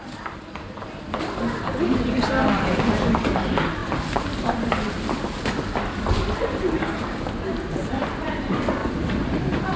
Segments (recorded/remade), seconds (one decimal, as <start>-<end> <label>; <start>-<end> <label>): 0.0-3.8 recorded; 3.8-5.1 remade; 5.1-8.8 recorded; 8.8-9.8 remade